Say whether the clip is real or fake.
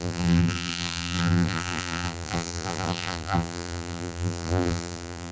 fake